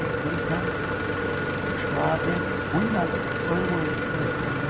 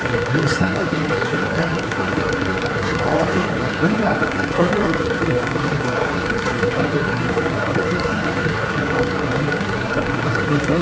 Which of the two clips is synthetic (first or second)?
second